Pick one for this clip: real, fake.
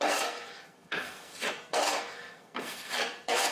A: fake